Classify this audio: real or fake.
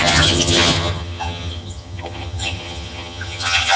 fake